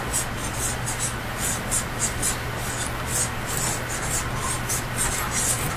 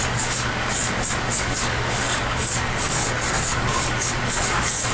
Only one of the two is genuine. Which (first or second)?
first